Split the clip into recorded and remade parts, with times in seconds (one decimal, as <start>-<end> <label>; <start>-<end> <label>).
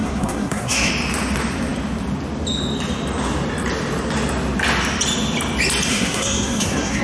0.0-0.9 remade; 0.9-5.9 recorded; 5.9-7.0 remade